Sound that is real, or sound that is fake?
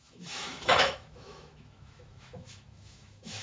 fake